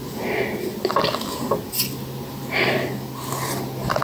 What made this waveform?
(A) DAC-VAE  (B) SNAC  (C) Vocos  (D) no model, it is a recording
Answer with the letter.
D